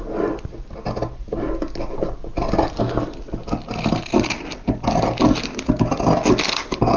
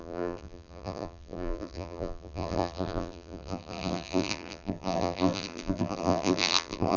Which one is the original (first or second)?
first